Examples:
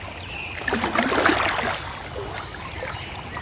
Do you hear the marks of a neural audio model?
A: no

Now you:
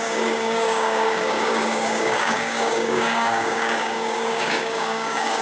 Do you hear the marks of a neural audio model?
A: yes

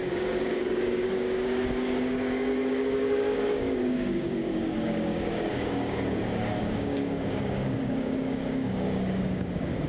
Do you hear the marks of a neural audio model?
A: yes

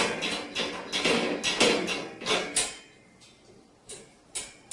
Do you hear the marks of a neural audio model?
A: no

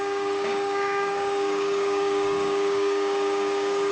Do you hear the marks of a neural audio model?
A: yes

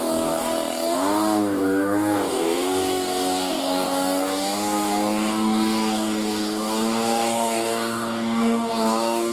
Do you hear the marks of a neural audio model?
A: yes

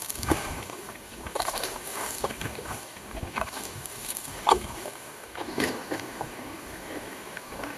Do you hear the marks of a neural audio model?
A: yes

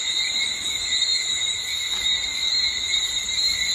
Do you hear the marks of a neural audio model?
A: no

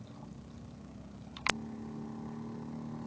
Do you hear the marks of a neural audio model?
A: no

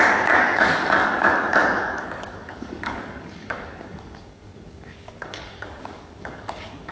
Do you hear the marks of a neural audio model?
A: yes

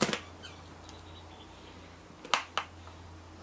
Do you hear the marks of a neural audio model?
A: no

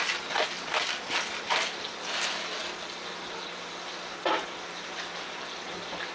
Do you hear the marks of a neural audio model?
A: no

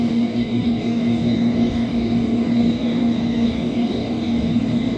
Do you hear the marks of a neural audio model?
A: yes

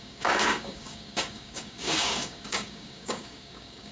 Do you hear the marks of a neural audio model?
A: yes